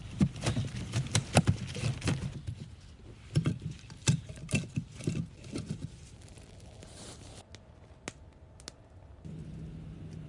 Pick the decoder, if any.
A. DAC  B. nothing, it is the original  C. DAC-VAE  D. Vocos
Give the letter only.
B